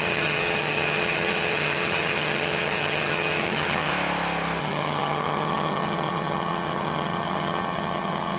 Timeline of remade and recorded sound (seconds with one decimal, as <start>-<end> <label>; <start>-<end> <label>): 0.0-3.9 remade; 3.9-4.6 recorded; 4.6-8.4 remade